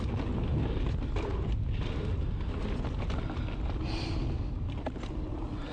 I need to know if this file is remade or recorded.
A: recorded